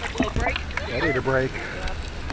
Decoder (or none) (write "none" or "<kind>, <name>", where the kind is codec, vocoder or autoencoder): none